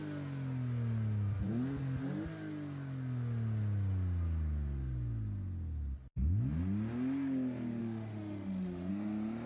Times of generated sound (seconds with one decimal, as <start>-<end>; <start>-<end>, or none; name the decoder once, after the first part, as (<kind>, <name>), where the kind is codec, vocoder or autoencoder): 7.8-8.9 (autoencoder, DAC-VAE)